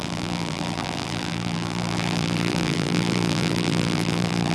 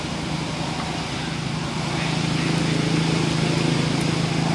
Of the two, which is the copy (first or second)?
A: first